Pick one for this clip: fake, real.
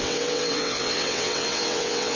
fake